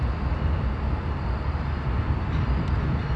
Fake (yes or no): no